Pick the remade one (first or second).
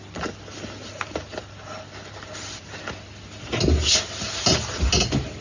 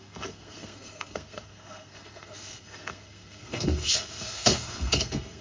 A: second